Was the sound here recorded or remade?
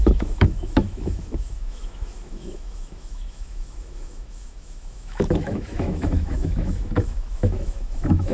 remade